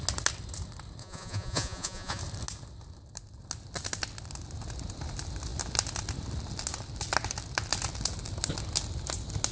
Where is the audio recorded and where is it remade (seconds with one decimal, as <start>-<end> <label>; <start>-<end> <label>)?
0.0-1.0 recorded; 1.0-2.2 remade; 2.2-9.5 recorded